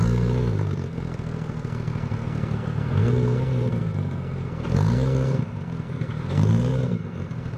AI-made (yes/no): yes